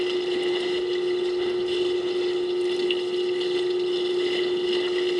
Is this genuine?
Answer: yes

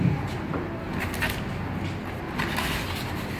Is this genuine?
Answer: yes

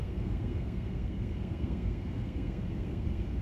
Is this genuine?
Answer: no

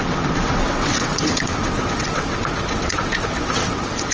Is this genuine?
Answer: no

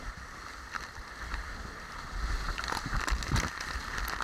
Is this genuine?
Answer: yes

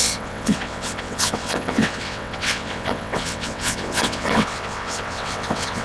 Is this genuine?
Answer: no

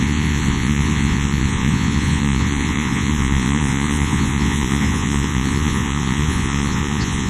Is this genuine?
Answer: no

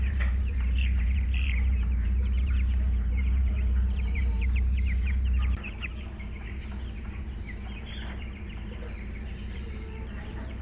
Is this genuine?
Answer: no